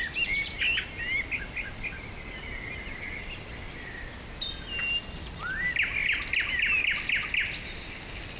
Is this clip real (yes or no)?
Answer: yes